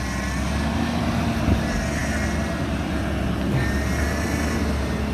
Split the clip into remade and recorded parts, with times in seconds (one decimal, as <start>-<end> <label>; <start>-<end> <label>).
0.0-5.1 recorded